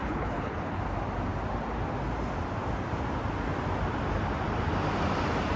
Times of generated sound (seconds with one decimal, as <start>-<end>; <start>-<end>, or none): 0.0-0.8